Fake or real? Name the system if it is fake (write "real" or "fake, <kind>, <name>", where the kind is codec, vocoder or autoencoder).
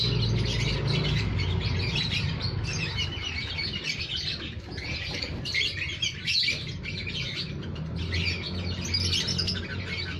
real